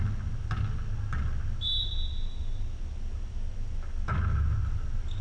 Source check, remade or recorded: recorded